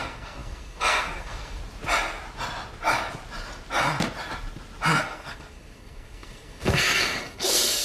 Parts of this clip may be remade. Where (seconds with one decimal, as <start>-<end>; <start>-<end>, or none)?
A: 0.0-1.6; 5.0-7.8